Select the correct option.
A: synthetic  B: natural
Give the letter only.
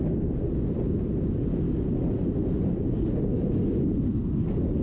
B